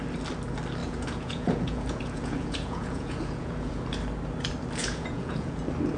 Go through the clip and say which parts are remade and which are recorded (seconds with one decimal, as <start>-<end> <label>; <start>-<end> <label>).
0.0-0.8 recorded; 0.8-3.8 remade; 3.8-4.8 recorded; 4.8-5.6 remade; 5.6-6.0 recorded